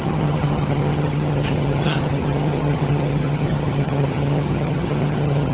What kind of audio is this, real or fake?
fake